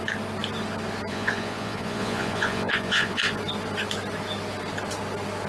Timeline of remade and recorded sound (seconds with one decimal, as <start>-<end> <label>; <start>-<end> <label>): 0.0-1.1 recorded; 1.1-3.2 remade; 3.2-5.5 recorded